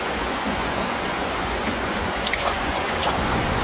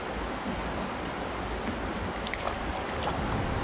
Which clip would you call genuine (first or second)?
second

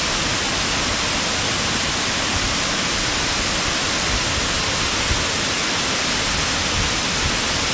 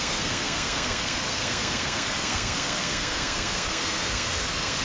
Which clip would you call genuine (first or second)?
first